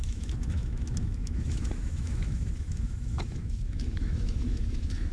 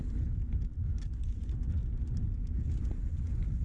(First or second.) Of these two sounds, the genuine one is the second